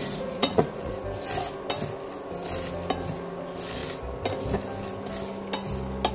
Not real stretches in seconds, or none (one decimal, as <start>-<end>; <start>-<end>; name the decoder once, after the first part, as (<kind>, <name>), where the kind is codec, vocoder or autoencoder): 0.0-0.9 (vocoder, Vocos)